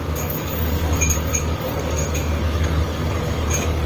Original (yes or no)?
no